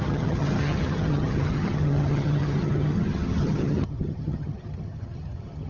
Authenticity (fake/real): fake